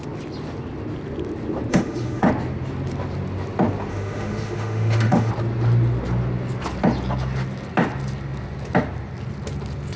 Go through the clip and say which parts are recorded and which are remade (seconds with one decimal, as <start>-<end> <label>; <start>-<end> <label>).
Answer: 0.0-1.7 recorded; 1.7-2.3 remade; 2.3-3.9 recorded; 3.9-5.3 remade; 5.3-10.0 recorded